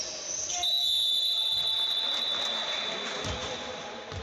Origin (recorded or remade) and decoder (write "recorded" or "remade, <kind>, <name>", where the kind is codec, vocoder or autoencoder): recorded